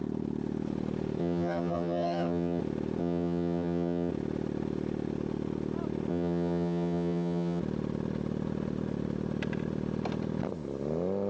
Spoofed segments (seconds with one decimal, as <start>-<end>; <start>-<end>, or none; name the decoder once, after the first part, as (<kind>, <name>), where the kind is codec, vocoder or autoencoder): 1.2-2.6 (vocoder, HiFi-GAN); 3.0-4.1; 6.1-7.6